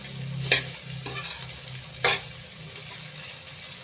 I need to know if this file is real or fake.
real